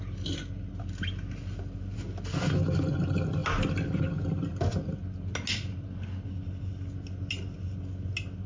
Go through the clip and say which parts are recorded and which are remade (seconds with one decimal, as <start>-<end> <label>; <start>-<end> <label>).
0.0-8.5 recorded